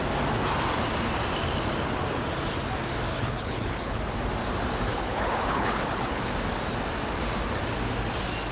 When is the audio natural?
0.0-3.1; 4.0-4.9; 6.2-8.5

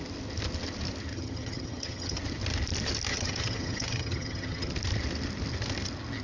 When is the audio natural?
0.0-1.1; 2.2-3.1; 4.7-6.2